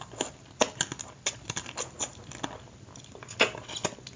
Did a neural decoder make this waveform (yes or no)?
no